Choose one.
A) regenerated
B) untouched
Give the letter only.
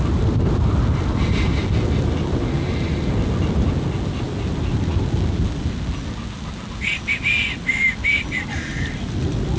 B